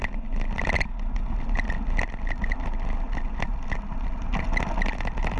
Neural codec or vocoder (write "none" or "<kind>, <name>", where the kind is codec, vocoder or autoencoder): none